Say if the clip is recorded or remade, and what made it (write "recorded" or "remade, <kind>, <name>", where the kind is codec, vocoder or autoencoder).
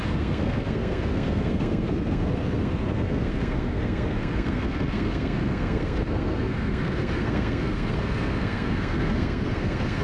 remade, codec, SNAC